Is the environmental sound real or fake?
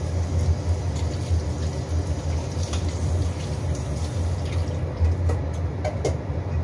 real